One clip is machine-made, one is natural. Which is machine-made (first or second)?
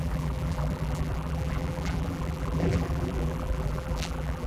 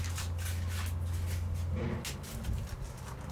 first